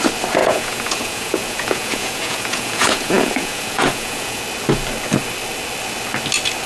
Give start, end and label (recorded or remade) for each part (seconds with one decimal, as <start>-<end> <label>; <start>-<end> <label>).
0.0-0.4 recorded; 0.4-4.4 remade; 4.4-6.7 recorded